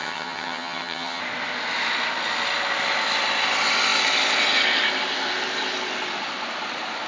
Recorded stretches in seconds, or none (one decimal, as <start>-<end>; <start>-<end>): 1.2-7.1